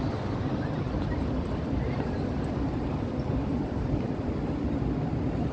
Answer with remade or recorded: remade